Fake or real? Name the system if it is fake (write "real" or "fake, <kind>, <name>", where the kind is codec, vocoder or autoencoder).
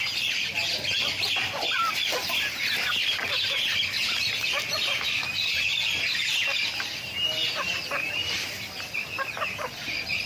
real